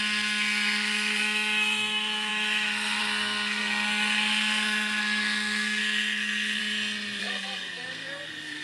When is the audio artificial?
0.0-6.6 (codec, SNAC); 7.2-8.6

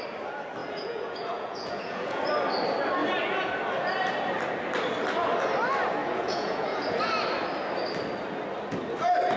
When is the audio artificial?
0.6-2.2 (vocoder, Vocos); 6.0-7.0